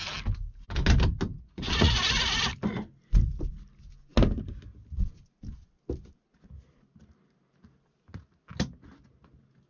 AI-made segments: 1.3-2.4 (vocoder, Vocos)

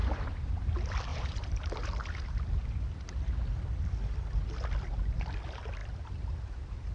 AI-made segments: 0.0-0.7 (vocoder, BigVGAN v2); 1.1-1.7; 5.8-6.9